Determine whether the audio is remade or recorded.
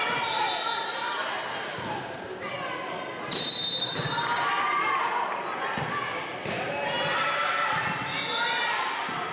recorded